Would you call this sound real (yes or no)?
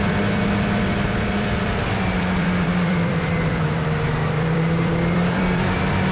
no